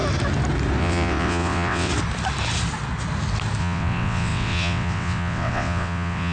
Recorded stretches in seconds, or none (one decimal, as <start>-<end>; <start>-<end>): 0.0-0.8; 1.9-3.6